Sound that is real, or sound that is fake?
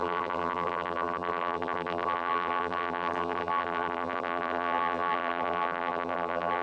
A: fake